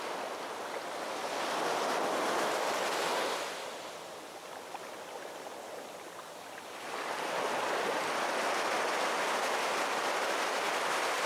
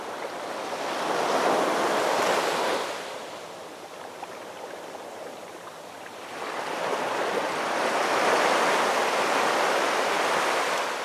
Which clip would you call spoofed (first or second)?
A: second